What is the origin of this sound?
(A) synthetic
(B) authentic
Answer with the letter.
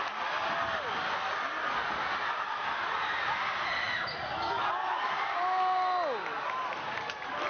B